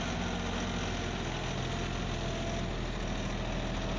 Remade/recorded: recorded